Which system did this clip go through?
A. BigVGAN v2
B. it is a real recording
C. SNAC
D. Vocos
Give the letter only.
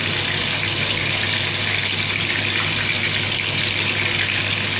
B